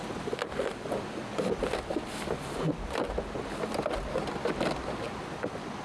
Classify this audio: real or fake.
real